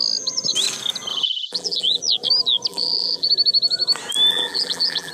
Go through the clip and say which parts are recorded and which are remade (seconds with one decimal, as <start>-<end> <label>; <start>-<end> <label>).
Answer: 0.0-1.1 recorded; 1.1-2.0 remade; 2.0-2.7 recorded; 2.7-3.3 remade; 3.3-4.3 recorded; 4.3-5.1 remade